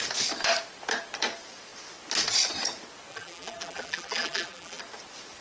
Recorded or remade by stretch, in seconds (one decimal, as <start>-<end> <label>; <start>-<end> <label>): 0.0-3.1 recorded; 3.1-4.8 remade; 4.8-5.4 recorded